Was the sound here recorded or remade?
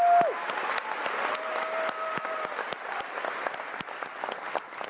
recorded